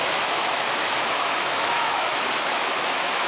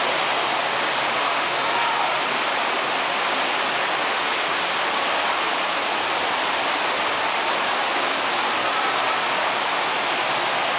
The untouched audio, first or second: second